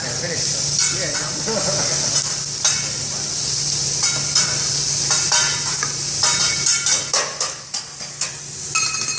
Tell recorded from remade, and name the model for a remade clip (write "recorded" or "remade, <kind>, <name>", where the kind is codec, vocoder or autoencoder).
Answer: recorded